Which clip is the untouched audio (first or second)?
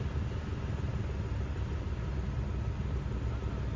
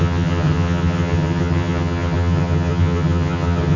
first